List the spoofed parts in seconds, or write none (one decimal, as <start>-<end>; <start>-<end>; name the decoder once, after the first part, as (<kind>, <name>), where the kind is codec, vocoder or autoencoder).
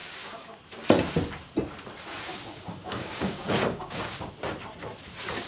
0.0-0.6 (codec, DAC); 2.3-4.3